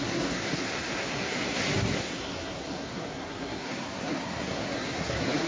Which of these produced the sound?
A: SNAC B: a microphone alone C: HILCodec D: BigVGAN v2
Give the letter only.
A